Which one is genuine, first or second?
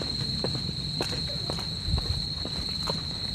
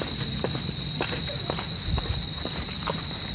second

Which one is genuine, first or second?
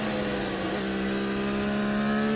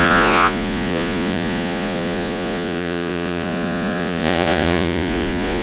first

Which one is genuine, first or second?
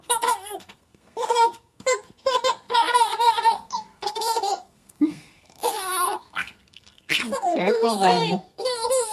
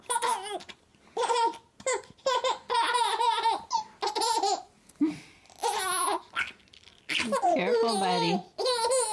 second